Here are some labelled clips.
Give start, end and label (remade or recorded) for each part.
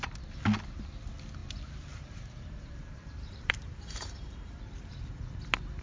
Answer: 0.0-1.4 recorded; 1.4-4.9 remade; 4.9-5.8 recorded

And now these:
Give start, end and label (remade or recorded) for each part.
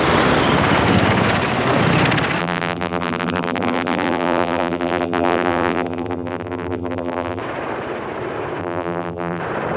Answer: 0.0-2.4 recorded; 2.4-7.4 remade; 7.4-8.6 recorded; 8.6-9.4 remade; 9.4-9.8 recorded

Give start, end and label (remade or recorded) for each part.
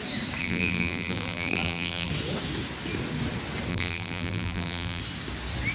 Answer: 0.0-0.4 recorded; 0.4-2.1 remade; 2.1-3.7 recorded; 3.7-5.0 remade; 5.0-5.7 recorded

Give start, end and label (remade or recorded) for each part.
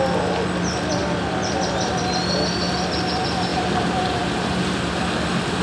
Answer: 0.0-1.0 recorded; 1.0-2.0 remade; 2.0-3.5 recorded; 3.5-5.0 remade; 5.0-5.6 recorded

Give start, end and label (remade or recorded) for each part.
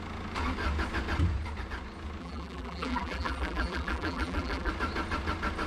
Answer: 0.0-2.2 recorded; 2.2-4.7 remade; 4.7-5.7 recorded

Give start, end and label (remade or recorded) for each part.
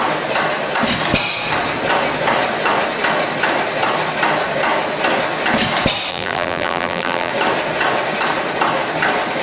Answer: 0.0-6.1 recorded; 6.1-7.3 remade; 7.3-9.4 recorded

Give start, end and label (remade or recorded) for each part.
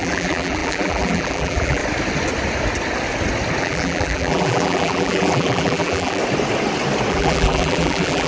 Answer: 0.0-1.8 remade; 1.8-3.6 recorded; 3.6-6.2 remade; 6.2-7.1 recorded; 7.1-8.3 remade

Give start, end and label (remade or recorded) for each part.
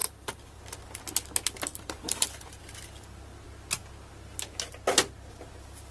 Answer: 0.0-0.6 remade; 0.6-1.7 recorded; 1.7-2.6 remade; 2.6-5.9 recorded